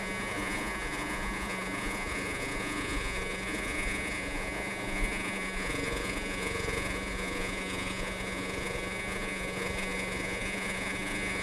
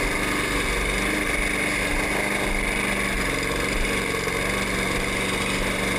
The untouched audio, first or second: second